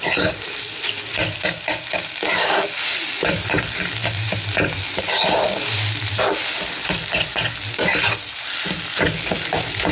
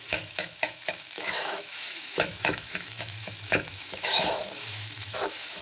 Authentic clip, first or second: first